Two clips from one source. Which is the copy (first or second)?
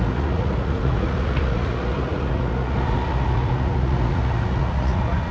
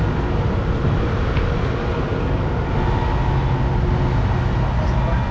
first